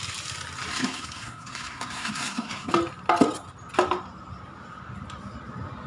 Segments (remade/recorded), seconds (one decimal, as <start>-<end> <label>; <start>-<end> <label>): 0.0-0.7 recorded; 0.7-2.7 remade; 2.7-5.9 recorded

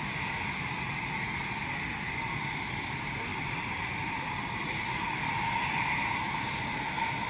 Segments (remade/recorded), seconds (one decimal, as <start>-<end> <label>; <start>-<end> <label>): 0.0-7.3 recorded